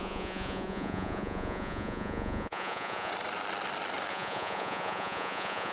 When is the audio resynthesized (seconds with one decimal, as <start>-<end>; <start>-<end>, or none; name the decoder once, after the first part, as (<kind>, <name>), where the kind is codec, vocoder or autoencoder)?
0.0-3.1 (vocoder, Vocos); 4.1-5.7